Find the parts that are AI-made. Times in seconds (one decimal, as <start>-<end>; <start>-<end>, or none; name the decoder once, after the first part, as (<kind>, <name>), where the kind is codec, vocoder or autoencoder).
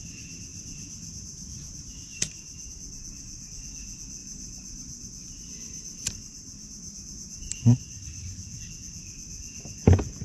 0.5-2.7 (vocoder, BigVGAN v2); 4.2-8.6